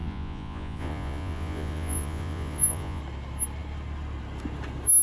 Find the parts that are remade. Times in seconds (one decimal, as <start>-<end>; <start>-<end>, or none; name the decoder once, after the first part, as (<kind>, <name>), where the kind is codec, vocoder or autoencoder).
0.0-3.0 (vocoder, Vocos)